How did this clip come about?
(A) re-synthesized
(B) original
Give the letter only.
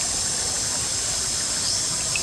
B